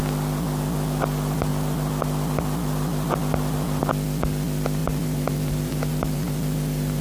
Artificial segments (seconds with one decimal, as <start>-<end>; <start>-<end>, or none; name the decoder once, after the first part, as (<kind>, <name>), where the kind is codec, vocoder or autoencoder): 4.8-7.0 (vocoder, BigVGAN v2)